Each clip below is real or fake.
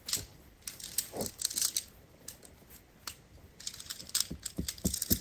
real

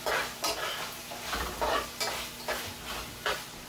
real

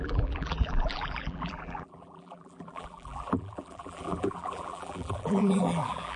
fake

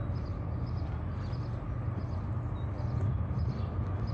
real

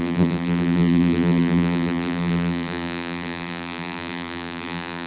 fake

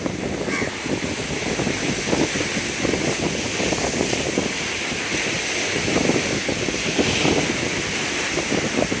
real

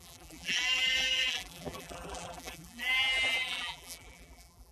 fake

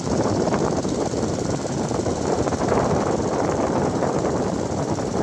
fake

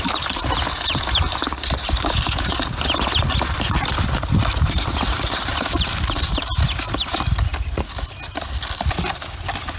fake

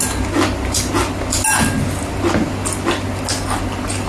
real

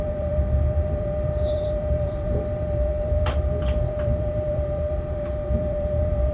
fake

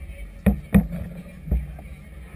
real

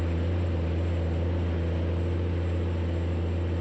real